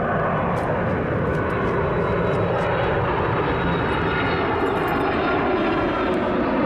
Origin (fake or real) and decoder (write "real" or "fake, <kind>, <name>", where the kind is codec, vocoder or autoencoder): real